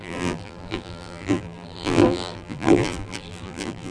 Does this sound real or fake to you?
fake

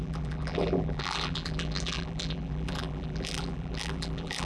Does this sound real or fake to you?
fake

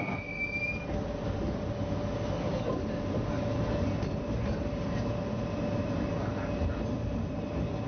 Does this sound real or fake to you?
real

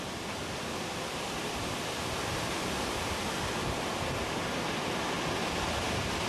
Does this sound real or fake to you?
fake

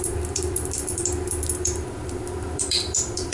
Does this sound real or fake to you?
fake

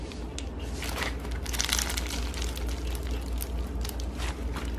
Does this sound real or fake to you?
real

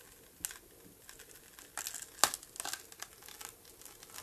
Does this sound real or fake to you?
real